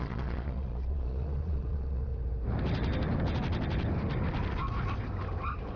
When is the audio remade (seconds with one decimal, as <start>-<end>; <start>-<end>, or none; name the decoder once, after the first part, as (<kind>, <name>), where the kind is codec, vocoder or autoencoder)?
0.0-2.1 (vocoder, Vocos)